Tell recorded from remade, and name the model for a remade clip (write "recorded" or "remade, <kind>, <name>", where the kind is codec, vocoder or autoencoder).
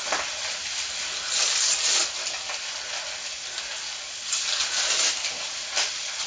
recorded